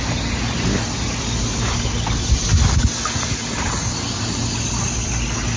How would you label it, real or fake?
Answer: real